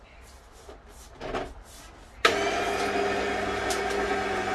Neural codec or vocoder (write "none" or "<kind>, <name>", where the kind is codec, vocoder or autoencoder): none